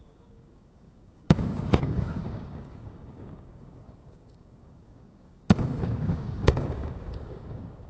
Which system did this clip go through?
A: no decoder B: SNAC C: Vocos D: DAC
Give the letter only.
D